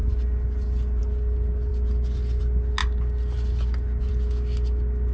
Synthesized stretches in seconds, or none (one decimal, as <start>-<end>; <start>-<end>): none

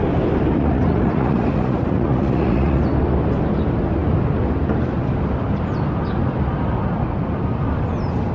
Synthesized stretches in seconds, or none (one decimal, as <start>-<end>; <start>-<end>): 0.5-2.8

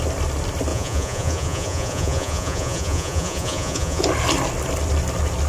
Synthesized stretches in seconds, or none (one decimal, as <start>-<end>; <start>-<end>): 0.7-4.0

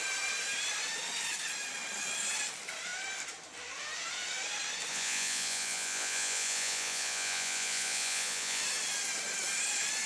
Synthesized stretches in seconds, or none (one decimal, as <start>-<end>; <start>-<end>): 4.9-8.6

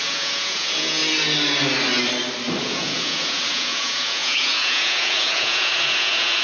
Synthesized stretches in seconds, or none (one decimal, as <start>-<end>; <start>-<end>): 0.0-1.0; 2.6-6.4

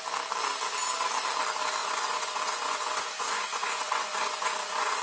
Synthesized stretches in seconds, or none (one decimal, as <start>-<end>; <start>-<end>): 1.8-5.0

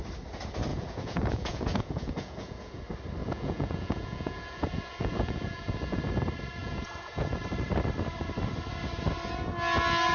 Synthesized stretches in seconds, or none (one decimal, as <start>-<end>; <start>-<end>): 0.7-2.8; 3.2-6.1; 6.6-7.4

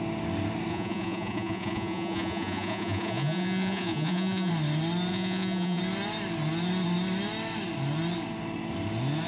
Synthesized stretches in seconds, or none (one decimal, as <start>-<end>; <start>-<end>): 0.7-4.5; 5.1-5.8